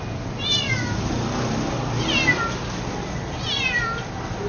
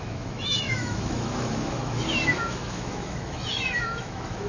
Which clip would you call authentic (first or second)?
first